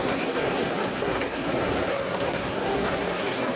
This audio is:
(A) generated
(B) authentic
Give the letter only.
A